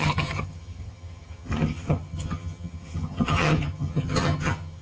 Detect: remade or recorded remade